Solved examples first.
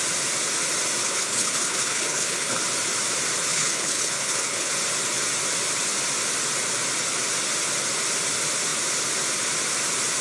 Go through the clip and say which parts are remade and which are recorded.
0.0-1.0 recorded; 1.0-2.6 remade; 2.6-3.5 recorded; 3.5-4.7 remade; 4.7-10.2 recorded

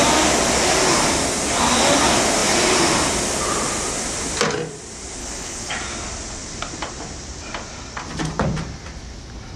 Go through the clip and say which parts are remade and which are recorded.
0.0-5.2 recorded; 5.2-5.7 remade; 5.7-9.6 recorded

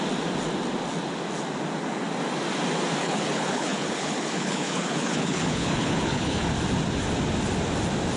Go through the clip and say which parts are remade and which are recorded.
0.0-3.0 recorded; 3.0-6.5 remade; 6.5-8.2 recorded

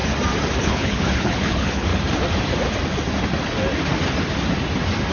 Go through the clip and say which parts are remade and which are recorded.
0.0-0.6 recorded; 0.6-1.9 remade; 1.9-5.1 recorded

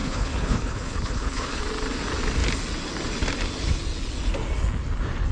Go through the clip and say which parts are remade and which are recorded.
0.0-1.6 remade; 1.6-5.3 recorded

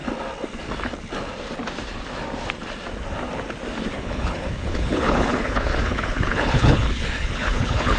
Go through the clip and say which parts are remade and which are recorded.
0.0-3.9 recorded; 3.9-8.0 remade

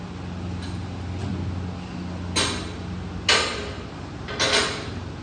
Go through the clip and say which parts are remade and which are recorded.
0.0-5.2 recorded